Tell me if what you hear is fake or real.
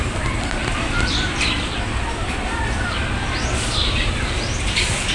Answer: fake